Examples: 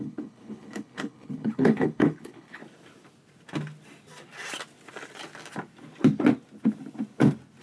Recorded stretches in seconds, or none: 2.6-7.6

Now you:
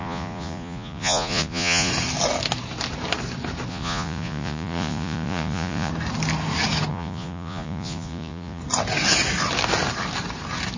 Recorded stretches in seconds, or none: 1.9-3.7; 5.9-6.9; 8.6-10.8

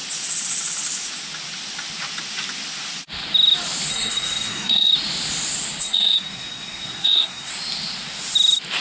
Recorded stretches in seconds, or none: 0.0-3.9; 4.9-5.8; 7.5-8.8

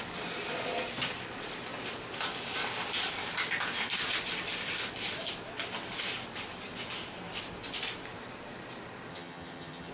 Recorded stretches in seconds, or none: 0.0-9.1

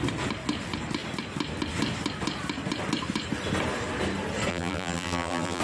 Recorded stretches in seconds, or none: 0.0-4.5

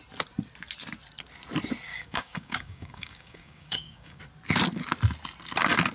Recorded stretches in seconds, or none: 0.0-1.9; 4.2-5.9

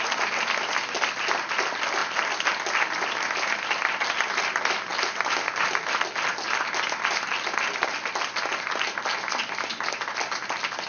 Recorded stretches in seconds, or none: 0.0-10.9

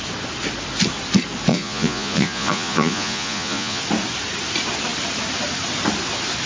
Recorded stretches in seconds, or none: 0.0-1.5; 3.8-6.5